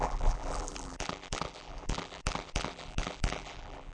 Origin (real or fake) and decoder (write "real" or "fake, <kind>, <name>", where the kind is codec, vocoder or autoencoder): fake, vocoder, BigVGAN v2